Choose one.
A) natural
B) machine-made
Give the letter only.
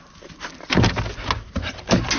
A